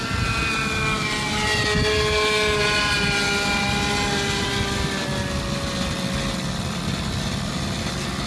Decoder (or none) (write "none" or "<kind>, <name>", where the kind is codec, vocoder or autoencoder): none